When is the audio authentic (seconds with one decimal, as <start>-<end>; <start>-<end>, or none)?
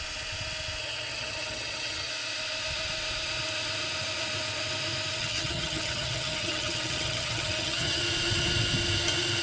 0.0-0.8; 2.1-5.2; 8.0-9.4